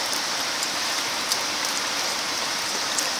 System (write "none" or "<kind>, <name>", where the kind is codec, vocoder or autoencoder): none